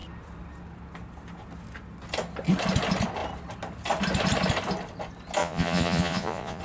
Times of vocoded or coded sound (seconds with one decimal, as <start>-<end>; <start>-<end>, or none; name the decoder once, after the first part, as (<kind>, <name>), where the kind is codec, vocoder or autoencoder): 5.4-6.6 (vocoder, Vocos)